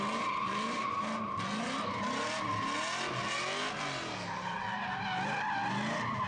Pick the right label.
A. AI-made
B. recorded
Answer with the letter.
B